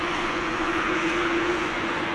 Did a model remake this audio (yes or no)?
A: yes